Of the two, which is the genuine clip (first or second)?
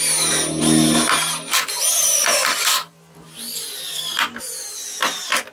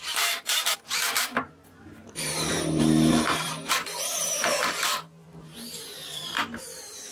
first